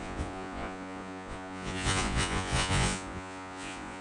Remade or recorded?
remade